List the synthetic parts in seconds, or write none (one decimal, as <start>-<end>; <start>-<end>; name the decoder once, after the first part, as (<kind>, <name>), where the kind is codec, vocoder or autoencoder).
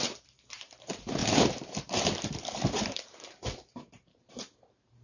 0.0-5.0 (vocoder, BigVGAN v2)